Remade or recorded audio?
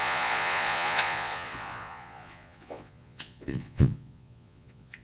remade